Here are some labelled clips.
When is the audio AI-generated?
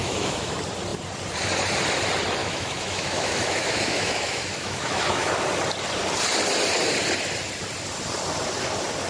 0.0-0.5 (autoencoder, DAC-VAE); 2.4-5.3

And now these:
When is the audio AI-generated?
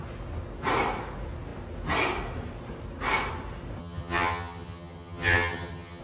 3.8-6.0 (vocoder, HiFi-GAN)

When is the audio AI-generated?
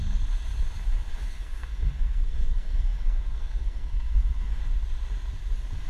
1.1-4.6 (codec, SNAC)